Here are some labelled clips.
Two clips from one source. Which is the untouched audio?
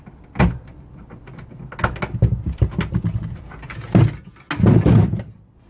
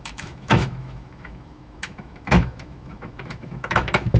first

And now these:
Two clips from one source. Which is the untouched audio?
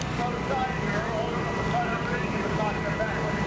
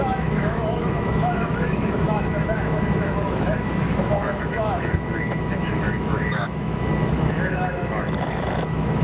first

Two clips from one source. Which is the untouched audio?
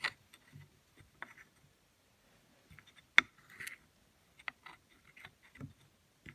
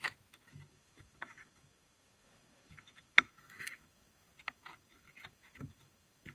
first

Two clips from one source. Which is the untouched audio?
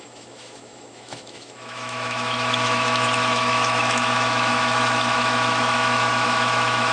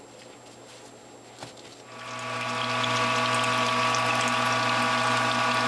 second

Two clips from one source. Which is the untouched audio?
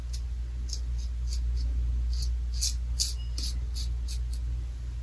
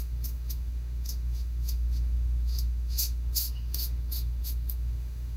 first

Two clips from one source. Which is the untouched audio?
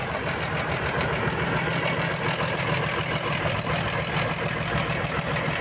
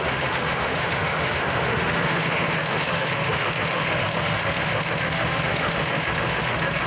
first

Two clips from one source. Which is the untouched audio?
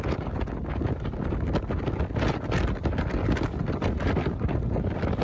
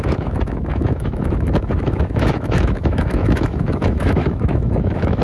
first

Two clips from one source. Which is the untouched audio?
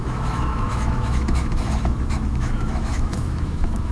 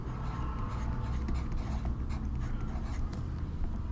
second